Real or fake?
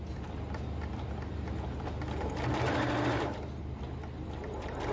real